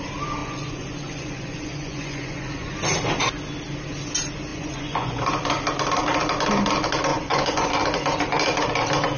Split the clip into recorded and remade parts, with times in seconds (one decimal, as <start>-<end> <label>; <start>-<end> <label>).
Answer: 0.0-0.4 recorded; 0.4-2.7 remade; 2.7-4.5 recorded; 4.5-5.2 remade; 5.2-7.1 recorded; 7.1-7.7 remade; 7.7-9.2 recorded